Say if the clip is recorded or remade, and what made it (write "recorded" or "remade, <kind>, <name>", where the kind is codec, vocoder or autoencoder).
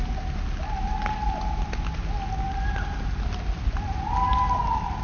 recorded